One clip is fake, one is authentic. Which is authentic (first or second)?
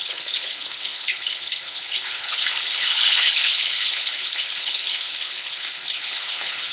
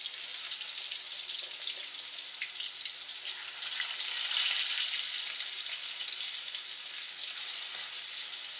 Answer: second